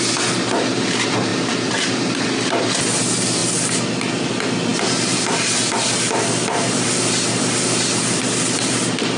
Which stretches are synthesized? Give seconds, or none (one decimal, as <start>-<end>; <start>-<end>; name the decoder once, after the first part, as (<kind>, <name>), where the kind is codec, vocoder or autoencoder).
none